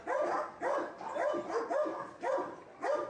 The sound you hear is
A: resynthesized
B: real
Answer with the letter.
B